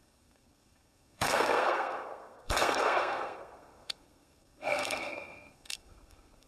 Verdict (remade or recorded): remade